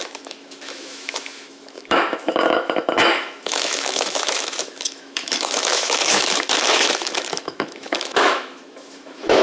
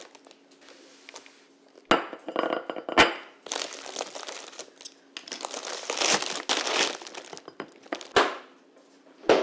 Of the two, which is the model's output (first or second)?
first